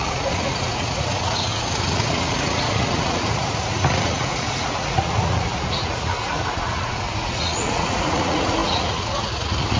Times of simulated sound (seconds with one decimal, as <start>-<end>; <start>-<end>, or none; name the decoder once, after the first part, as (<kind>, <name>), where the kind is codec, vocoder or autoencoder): 0.0-9.8 (vocoder, Vocos)